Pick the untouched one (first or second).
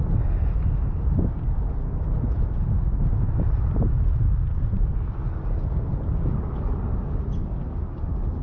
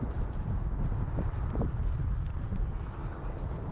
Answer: first